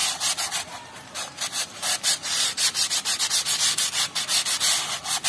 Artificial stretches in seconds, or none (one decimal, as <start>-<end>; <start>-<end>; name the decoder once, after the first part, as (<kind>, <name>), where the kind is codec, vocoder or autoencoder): 0.0-3.2 (vocoder, BigVGAN v2)